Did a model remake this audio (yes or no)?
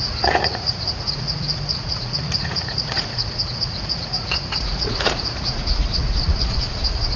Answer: yes